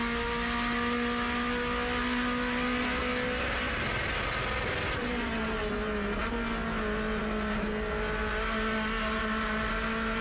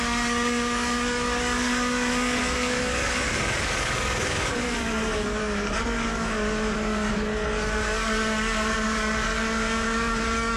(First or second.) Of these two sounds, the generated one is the second